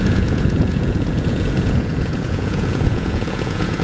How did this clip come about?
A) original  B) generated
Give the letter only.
B